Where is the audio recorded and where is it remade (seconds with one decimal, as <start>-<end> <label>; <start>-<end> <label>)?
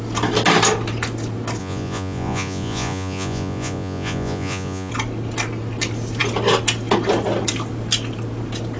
0.0-1.6 recorded; 1.6-4.9 remade; 4.9-8.8 recorded